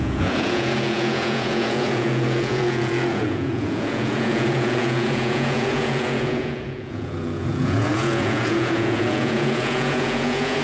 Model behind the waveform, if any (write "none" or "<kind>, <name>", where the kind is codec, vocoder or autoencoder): vocoder, Vocos